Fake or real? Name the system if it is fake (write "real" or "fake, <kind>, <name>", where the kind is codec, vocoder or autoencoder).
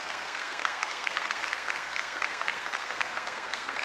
fake, codec, SNAC